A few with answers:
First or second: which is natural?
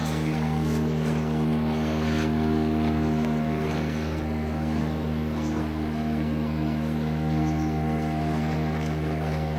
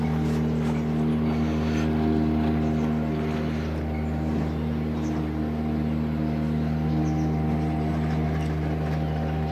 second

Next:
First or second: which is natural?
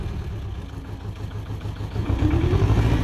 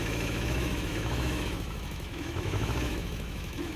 first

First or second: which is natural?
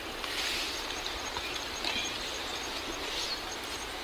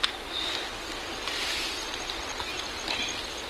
second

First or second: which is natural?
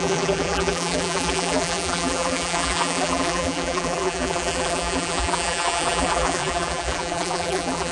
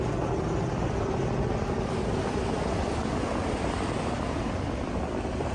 second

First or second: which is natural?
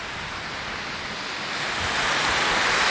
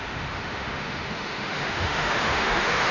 first